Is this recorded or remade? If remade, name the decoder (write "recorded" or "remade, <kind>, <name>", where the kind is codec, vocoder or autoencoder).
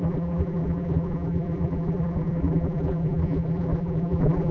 remade, vocoder, BigVGAN v2